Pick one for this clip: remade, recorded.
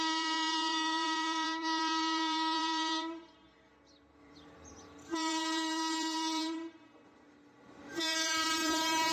remade